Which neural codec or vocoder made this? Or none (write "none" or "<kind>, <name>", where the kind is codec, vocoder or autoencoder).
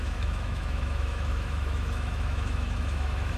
autoencoder, DAC-VAE